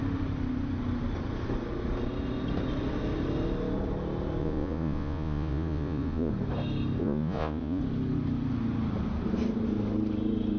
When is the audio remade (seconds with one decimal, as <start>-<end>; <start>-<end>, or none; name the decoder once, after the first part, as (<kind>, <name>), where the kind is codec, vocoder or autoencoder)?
4.4-6.3 (vocoder, Vocos); 7.0-7.8